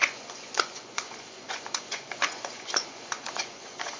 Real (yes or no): no